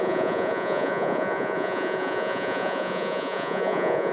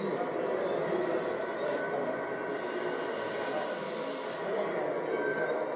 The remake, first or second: first